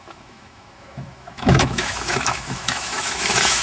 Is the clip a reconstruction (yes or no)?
yes